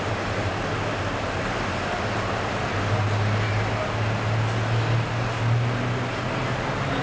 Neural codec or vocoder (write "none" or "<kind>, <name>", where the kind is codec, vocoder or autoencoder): none